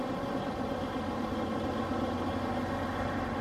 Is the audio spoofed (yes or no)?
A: no